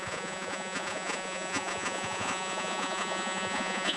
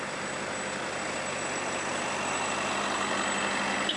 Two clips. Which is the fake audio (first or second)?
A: first